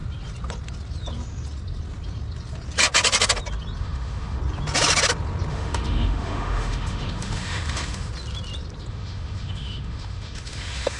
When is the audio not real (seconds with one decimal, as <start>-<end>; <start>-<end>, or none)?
3.8-4.4; 5.5-8.1; 8.9-11.0

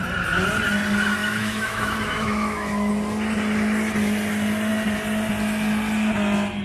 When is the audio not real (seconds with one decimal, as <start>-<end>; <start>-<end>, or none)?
1.2-2.9

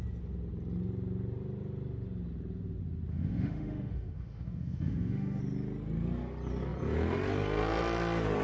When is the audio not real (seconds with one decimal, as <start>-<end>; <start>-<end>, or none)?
3.1-5.4

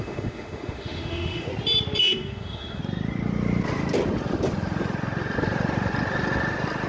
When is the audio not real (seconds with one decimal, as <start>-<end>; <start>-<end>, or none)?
0.0-1.5; 2.0-2.8

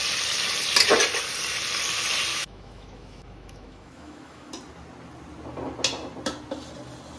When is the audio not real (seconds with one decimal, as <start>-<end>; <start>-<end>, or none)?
2.3-4.5

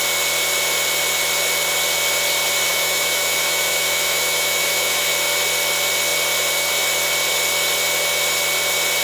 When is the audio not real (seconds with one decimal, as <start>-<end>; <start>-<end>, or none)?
2.7-5.1